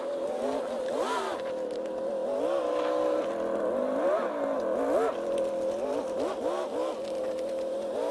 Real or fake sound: real